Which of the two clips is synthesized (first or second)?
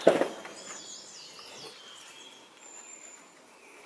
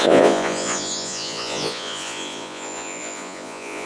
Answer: second